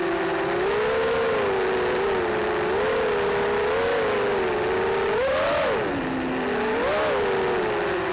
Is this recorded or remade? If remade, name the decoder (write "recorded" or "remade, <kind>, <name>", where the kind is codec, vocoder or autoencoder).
recorded